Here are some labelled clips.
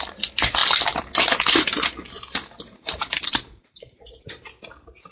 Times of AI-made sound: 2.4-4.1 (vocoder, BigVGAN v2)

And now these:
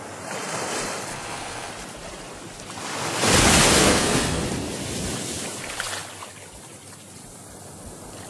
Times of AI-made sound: 1.1-1.7 (codec, SNAC); 3.8-4.4

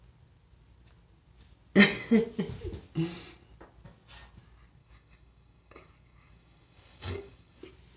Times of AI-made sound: 4.8-7.6 (codec, DAC)

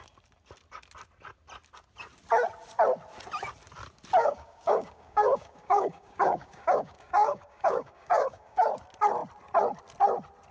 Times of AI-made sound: 4.2-8.6 (codec, DAC)

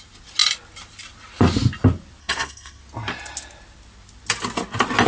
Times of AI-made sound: 2.2-2.8 (codec, SNAC)

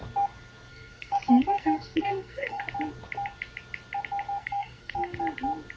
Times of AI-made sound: 0.7-2.6 (codec, SNAC); 4.4-5.2